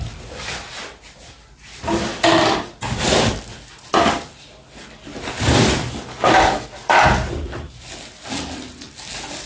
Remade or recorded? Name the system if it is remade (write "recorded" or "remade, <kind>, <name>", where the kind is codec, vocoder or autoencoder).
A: recorded